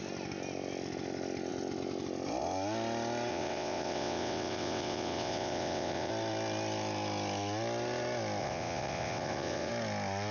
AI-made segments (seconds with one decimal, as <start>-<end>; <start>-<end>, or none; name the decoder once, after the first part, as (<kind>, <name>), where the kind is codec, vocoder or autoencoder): 3.3-6.1 (vocoder, WaveNeXt); 8.4-9.7